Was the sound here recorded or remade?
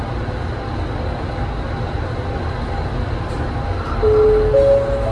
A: recorded